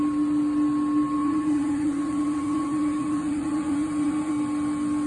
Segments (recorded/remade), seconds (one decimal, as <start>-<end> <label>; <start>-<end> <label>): 0.0-1.2 recorded; 1.2-4.3 remade; 4.3-5.1 recorded